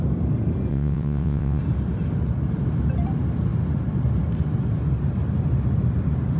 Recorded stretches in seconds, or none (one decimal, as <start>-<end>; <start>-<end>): 0.0-0.7; 1.6-6.4